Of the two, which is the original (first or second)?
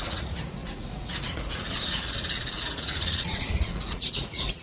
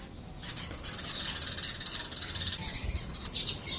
second